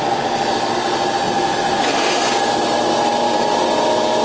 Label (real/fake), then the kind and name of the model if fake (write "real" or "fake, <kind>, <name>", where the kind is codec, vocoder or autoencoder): real